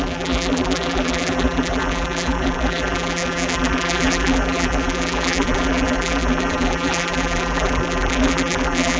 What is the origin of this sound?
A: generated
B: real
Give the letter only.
A